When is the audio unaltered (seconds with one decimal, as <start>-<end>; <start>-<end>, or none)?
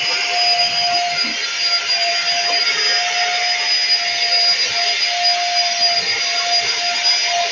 0.0-7.5